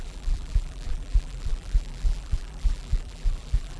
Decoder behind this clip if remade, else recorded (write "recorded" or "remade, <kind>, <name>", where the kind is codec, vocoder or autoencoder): remade, vocoder, BigVGAN v2